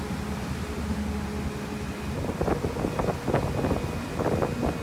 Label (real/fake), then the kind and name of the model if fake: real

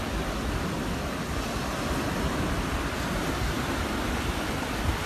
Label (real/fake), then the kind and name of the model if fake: real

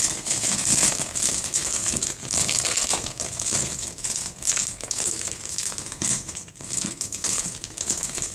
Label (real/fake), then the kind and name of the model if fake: fake, codec, SNAC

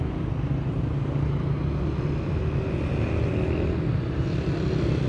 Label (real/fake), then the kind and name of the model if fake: real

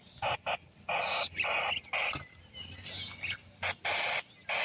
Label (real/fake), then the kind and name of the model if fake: real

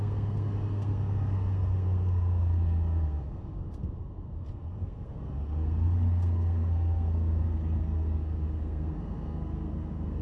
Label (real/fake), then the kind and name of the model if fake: fake, codec, SNAC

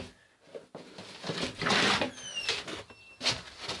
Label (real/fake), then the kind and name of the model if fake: real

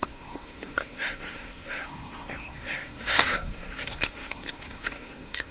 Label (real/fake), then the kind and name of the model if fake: fake, codec, SNAC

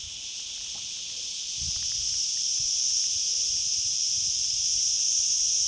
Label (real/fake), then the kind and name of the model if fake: real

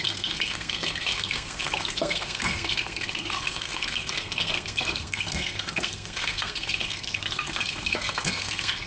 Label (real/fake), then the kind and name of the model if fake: fake, codec, SNAC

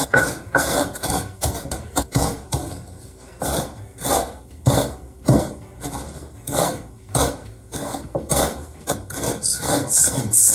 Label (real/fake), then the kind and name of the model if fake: fake, codec, SNAC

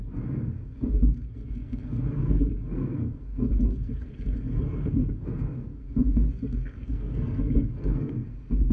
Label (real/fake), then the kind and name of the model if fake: fake, codec, SNAC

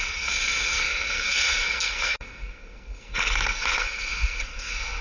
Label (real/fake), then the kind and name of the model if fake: fake, codec, SNAC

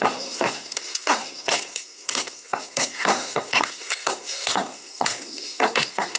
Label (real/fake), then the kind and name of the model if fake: fake, codec, SNAC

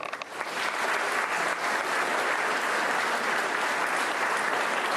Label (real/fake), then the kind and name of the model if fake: real